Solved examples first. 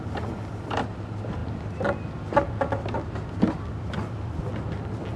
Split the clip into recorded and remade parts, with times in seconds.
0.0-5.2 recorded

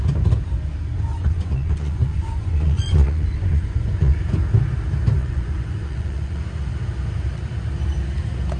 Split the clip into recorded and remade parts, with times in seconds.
0.0-1.1 recorded; 1.1-4.2 remade; 4.2-5.2 recorded; 5.2-6.4 remade; 6.4-8.6 recorded

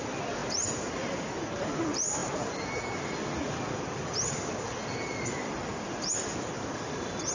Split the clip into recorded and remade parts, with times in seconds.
0.0-7.3 recorded

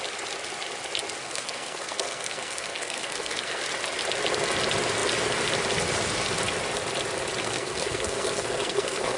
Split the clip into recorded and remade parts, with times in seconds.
0.0-1.2 recorded; 1.2-3.6 remade; 3.6-7.4 recorded; 7.4-9.2 remade

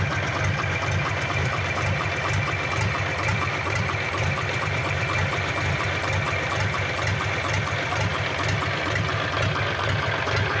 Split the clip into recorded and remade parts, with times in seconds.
0.0-10.6 recorded

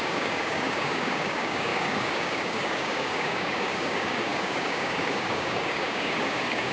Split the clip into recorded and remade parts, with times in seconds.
0.0-6.7 remade

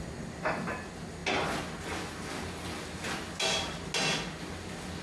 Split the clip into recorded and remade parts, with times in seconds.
0.0-5.0 recorded

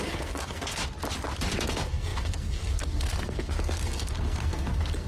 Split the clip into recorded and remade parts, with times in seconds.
0.0-0.8 remade; 0.8-1.7 recorded; 1.7-5.1 remade